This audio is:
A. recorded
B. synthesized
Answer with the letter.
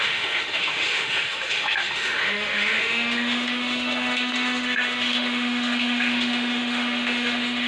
B